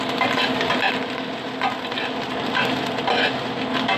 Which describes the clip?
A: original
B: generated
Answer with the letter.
A